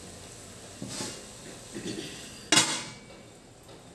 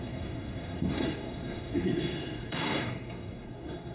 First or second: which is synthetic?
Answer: second